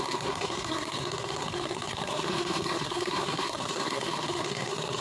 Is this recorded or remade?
remade